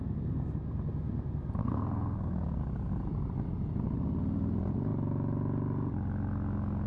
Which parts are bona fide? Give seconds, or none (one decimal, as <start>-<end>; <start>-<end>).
0.0-1.6; 2.6-6.9